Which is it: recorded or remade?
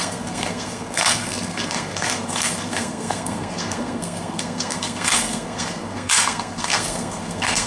remade